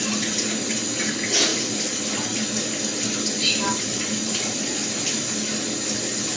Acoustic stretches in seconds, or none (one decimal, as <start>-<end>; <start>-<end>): 0.0-6.4